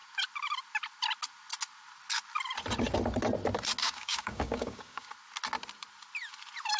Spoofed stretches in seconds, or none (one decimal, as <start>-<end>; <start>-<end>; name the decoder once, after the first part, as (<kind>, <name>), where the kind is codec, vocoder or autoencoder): 3.8-5.1 (codec, DAC)